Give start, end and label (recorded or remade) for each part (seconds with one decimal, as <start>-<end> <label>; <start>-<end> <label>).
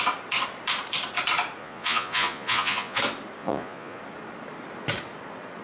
0.0-1.6 recorded; 1.6-3.0 remade; 3.0-3.4 recorded; 3.4-4.0 remade; 4.0-5.6 recorded